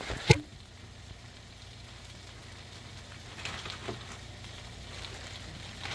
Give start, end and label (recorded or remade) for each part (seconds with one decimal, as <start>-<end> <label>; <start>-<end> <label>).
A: 0.0-0.5 recorded; 0.5-1.6 remade; 1.6-5.9 recorded